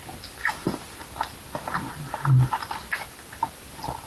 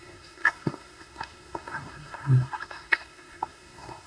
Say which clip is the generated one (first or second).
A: second